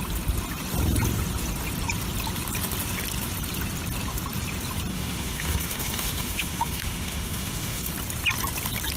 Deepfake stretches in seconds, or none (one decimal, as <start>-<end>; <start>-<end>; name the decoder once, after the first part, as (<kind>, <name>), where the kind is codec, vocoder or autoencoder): 4.9-7.9 (autoencoder, DAC-VAE)